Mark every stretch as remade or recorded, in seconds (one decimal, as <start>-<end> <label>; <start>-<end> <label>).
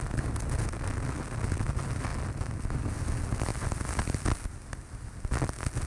0.0-5.9 recorded